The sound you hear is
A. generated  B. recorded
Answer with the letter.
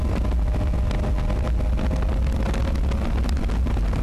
B